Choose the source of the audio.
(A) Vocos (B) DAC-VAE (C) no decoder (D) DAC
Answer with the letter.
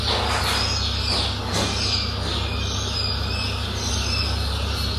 C